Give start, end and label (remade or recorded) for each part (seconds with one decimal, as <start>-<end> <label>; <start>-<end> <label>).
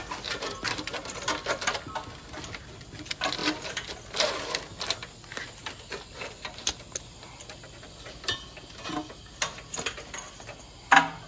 0.0-11.3 recorded